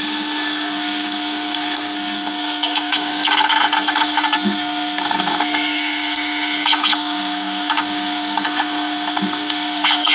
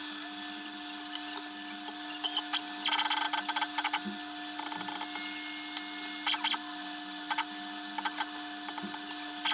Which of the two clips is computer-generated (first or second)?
first